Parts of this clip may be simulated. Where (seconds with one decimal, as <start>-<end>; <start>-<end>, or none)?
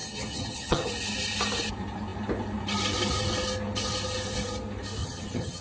0.0-0.9; 5.0-5.6